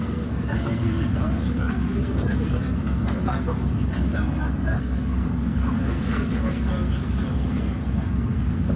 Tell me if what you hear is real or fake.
fake